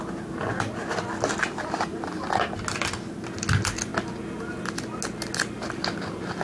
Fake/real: real